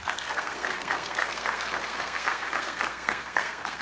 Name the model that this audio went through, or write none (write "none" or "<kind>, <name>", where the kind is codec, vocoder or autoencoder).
codec, SNAC